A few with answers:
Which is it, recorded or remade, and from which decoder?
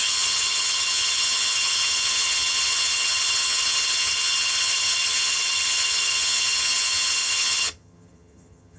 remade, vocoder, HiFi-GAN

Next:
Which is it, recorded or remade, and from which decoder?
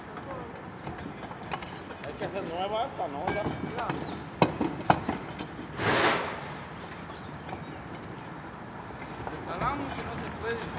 recorded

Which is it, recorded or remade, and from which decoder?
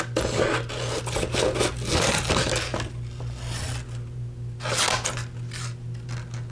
recorded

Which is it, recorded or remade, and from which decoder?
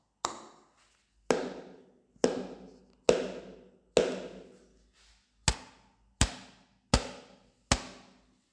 recorded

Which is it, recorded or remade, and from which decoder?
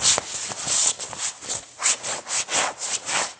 recorded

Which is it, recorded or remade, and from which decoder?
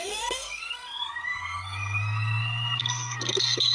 remade, codec, SNAC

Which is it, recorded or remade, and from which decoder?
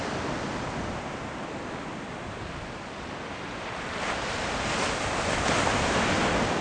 recorded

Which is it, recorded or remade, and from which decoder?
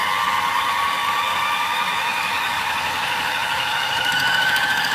remade, codec, DAC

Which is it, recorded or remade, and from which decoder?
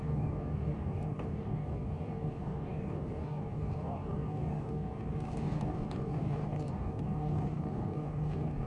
remade, codec, DAC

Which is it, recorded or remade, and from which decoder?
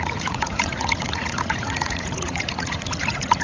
remade, vocoder, Vocos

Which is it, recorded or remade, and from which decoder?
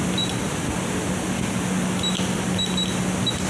recorded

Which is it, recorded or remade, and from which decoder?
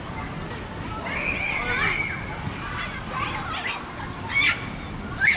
recorded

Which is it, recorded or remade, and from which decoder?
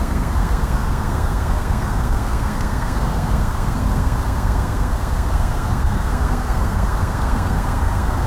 remade, codec, SNAC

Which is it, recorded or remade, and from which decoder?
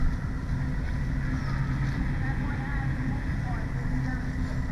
recorded